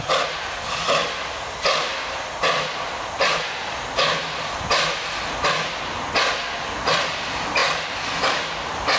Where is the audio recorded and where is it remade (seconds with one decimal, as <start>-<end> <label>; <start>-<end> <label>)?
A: 0.0-9.0 recorded